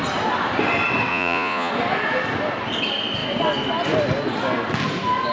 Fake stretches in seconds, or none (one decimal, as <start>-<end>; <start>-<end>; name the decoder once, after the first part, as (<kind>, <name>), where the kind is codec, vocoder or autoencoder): 1.1-1.7 (vocoder, Vocos)